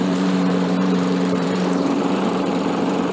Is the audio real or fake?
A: fake